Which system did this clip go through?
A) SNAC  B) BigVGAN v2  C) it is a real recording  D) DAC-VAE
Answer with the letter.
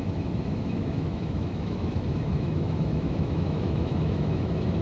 D